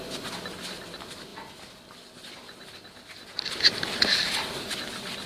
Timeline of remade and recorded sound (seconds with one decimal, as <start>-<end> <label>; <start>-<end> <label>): 0.0-5.3 recorded